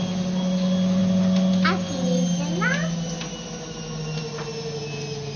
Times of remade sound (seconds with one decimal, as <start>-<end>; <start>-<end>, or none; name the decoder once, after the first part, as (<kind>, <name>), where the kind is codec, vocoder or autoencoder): none